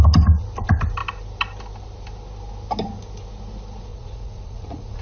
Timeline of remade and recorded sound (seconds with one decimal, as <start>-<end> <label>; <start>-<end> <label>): 0.0-3.9 recorded; 3.9-5.0 remade